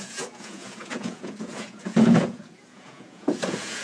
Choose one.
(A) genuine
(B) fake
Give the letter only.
B